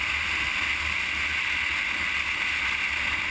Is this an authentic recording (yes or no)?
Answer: yes